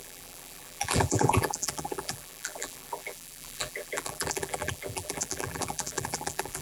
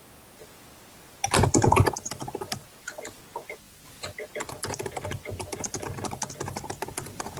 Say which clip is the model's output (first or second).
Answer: first